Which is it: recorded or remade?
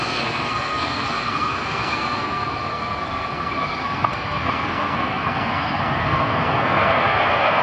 remade